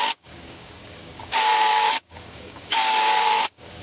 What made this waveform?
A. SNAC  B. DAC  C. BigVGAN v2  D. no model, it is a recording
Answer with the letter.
B